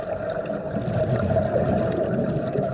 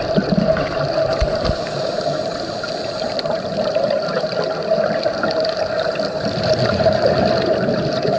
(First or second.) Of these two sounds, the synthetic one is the second